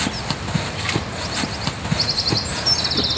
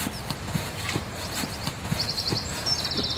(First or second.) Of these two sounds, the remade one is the second